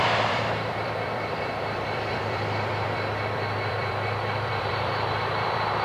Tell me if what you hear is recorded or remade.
remade